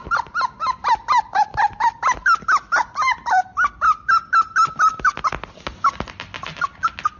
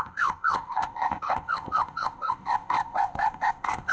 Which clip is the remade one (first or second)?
second